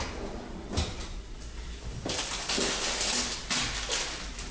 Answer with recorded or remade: recorded